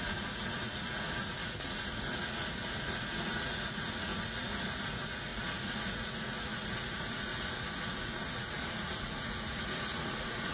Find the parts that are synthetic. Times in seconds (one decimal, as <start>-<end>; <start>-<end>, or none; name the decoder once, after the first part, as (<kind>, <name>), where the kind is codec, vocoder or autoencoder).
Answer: 0.0-10.5 (vocoder, Vocos)